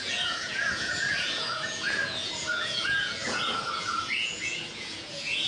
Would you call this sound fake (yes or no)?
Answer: yes